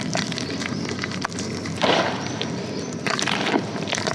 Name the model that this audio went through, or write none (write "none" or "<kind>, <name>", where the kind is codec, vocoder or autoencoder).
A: vocoder, BigVGAN v2